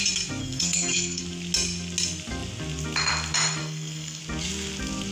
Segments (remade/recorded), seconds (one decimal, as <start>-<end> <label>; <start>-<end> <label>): 0.0-0.4 recorded; 0.4-1.2 remade; 1.2-3.6 recorded; 3.6-4.2 remade; 4.2-5.1 recorded